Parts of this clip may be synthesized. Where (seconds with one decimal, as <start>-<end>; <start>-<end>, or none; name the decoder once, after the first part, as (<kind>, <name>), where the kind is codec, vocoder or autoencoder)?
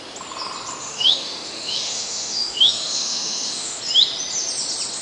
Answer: 0.8-3.8 (autoencoder, DAC-VAE)